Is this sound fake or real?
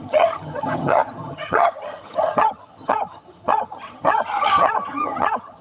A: fake